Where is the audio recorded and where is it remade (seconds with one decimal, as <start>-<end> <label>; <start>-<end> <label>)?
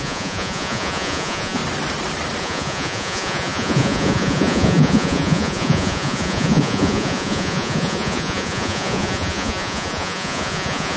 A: 0.0-1.6 remade; 1.6-2.4 recorded; 2.4-11.0 remade